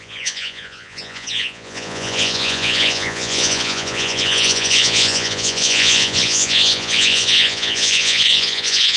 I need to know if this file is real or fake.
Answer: fake